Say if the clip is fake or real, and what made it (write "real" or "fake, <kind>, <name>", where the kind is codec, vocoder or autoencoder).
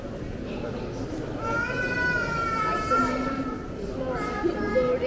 real